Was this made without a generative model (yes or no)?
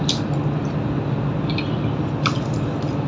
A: yes